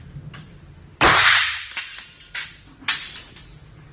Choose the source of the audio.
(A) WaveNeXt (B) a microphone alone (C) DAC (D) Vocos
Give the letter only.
B